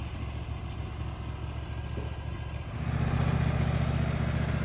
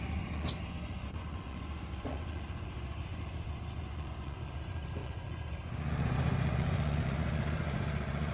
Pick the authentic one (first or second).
first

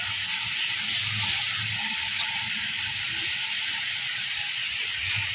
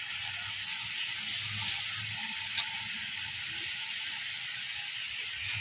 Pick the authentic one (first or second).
second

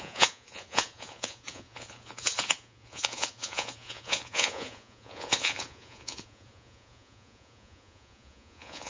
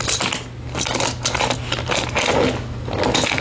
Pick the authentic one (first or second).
second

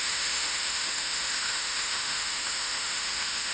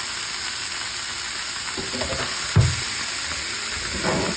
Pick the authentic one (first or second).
second